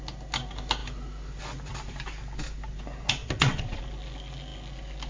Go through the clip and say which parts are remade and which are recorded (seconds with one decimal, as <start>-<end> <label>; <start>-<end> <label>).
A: 0.0-3.2 recorded; 3.2-3.8 remade; 3.8-5.1 recorded